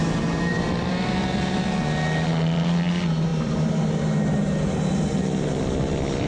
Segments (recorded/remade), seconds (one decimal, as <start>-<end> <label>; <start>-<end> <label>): 0.0-6.3 recorded